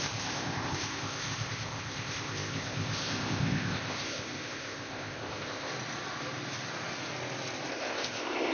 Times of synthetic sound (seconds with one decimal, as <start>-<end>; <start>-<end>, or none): 0.0-5.7; 7.7-8.5